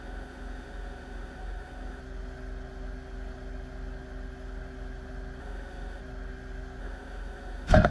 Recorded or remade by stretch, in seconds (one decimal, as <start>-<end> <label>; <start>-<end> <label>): 0.0-2.0 remade; 2.0-5.4 recorded; 5.4-6.0 remade; 6.0-6.8 recorded; 6.8-7.9 remade